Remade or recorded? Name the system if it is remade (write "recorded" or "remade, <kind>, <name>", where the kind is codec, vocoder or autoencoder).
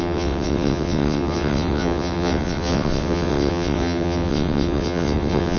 remade, vocoder, WaveNeXt